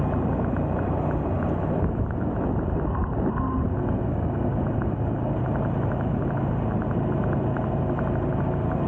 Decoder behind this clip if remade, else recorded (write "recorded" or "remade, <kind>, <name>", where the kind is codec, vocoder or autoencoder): recorded